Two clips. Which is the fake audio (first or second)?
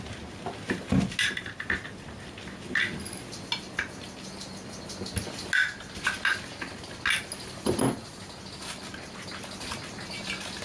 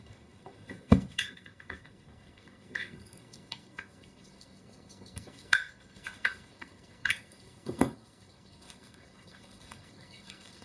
second